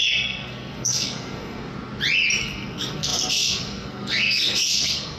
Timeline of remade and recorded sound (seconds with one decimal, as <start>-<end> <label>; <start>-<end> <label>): 0.0-1.7 remade; 1.7-2.4 recorded; 2.4-5.2 remade